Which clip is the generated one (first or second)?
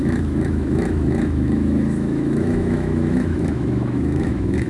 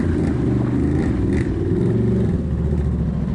first